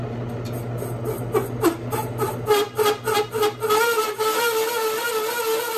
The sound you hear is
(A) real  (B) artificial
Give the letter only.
A